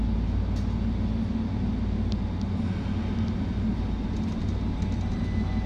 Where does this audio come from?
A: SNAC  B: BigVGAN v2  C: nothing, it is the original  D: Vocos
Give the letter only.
C